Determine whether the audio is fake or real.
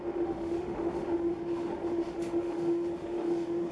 fake